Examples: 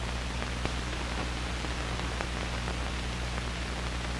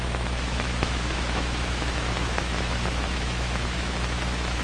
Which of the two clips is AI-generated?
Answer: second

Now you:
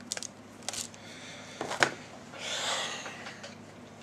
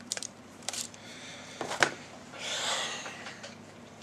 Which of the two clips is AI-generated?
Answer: second